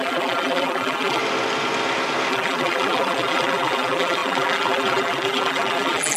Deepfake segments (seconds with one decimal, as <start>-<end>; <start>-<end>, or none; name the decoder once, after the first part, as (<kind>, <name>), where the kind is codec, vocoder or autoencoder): 0.0-1.2 (vocoder, BigVGAN v2); 2.3-6.2